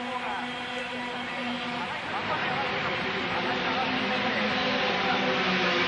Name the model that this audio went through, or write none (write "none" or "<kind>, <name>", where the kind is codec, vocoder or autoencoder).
none